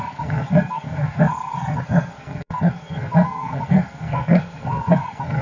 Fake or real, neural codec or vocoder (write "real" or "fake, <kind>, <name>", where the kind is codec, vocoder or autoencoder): fake, codec, SNAC